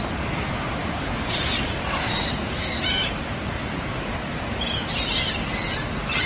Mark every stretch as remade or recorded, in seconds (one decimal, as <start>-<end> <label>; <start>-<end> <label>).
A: 0.0-0.8 recorded; 0.8-4.6 remade; 4.6-6.3 recorded